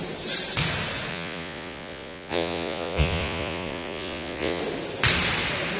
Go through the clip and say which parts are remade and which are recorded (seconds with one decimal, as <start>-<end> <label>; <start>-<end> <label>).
0.0-1.1 recorded; 1.1-4.6 remade; 4.6-5.8 recorded